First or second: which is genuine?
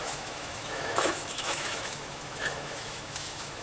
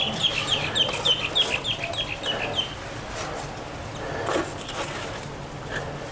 second